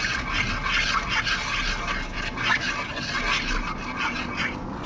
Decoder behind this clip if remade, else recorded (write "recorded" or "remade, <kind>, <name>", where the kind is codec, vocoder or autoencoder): recorded